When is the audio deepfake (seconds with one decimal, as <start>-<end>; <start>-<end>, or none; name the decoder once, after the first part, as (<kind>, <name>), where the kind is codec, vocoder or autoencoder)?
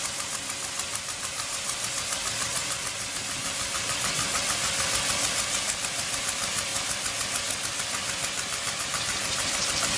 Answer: none